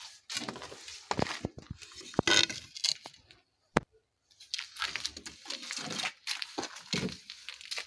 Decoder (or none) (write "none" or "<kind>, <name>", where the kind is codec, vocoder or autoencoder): none